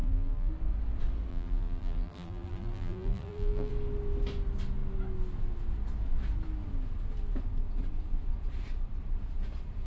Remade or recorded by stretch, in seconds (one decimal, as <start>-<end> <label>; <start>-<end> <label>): 0.0-0.5 remade; 0.5-1.3 recorded; 1.3-3.7 remade; 3.7-9.9 recorded